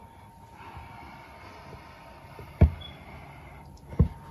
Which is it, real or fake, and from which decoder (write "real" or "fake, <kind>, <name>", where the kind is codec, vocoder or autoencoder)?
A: real